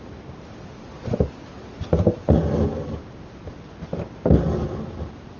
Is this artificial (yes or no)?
no